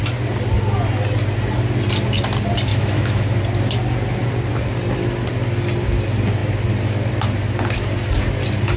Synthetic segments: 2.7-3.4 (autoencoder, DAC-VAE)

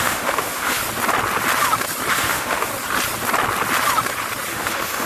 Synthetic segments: 0.0-0.8 (autoencoder, DAC-VAE); 2.1-2.7; 4.5-5.1

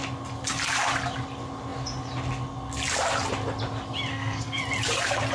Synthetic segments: 4.1-4.6 (codec, SNAC)

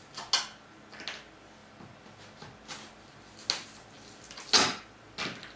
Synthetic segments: none